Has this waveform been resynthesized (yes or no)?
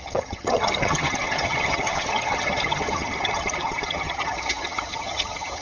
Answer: yes